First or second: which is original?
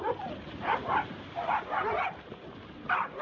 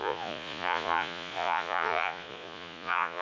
first